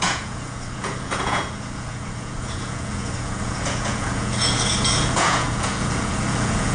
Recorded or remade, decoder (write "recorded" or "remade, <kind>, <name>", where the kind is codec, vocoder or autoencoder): remade, vocoder, Vocos